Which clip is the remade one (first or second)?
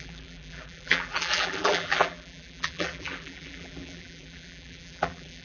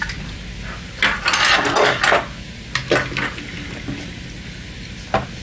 first